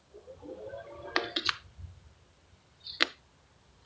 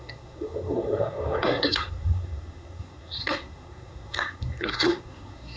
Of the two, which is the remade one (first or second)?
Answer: second